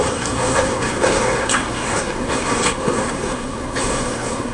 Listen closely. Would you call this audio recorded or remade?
remade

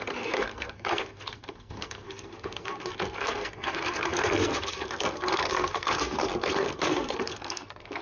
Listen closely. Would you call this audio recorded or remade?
remade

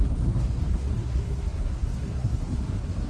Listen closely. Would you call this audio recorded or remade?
remade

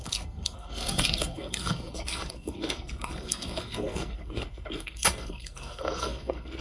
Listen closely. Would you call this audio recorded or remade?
remade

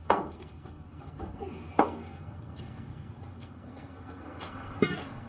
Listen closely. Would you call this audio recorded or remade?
remade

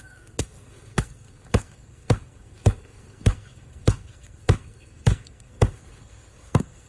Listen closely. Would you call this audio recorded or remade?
remade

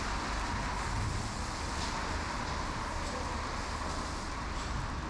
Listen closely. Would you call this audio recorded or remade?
recorded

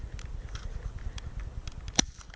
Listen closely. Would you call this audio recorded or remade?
recorded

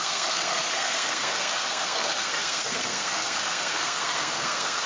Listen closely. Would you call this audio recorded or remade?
remade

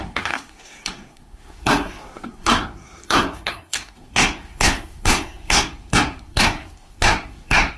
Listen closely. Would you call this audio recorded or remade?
remade